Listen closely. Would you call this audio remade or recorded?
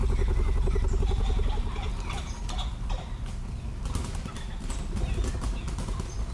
recorded